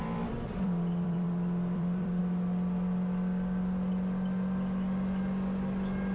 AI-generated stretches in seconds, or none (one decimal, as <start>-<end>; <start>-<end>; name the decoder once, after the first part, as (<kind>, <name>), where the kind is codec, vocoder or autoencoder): 0.0-2.2 (vocoder, BigVGAN v2)